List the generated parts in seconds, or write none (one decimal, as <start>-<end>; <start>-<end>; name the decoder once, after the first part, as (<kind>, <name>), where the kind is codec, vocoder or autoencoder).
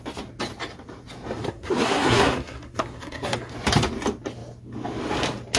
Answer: 1.4-3.5 (codec, SNAC)